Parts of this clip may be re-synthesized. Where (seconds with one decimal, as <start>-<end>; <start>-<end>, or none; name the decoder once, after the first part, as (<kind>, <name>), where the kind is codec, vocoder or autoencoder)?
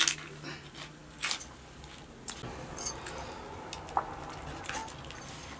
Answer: none